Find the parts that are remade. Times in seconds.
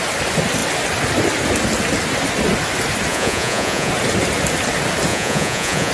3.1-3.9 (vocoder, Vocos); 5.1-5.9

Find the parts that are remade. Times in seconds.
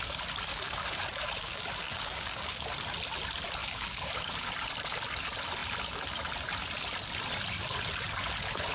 0.5-2.7 (codec, DAC); 3.6-4.5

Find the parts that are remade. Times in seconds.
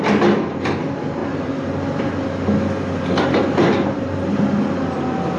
none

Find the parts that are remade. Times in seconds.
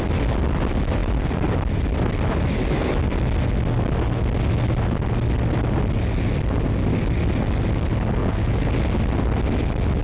8.2-8.7 (vocoder, Vocos)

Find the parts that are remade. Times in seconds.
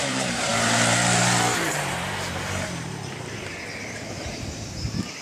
0.0-5.2 (vocoder, BigVGAN v2)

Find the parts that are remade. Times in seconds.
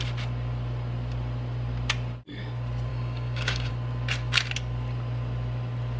2.9-3.7 (codec, DAC)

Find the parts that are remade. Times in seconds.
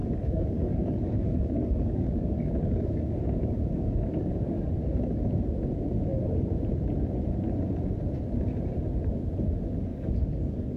0.0-4.6 (codec, DAC); 9.9-10.8